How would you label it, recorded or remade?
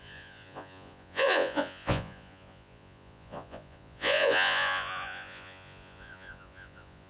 remade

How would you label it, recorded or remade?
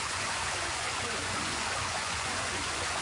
remade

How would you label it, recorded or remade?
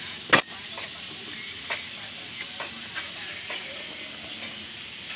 recorded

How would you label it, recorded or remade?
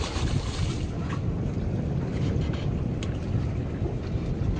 recorded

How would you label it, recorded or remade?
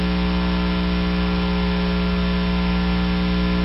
recorded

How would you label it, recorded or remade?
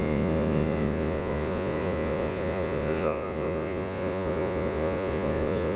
remade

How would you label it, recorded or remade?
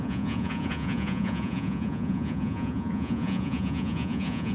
remade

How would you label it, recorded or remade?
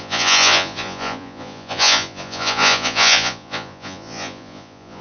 remade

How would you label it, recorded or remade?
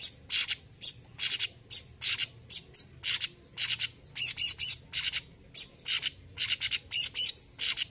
recorded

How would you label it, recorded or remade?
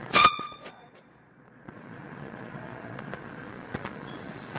remade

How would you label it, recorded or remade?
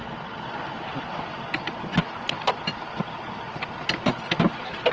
recorded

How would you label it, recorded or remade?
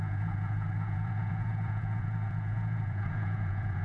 remade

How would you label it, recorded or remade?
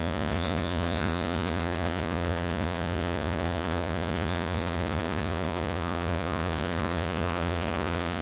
remade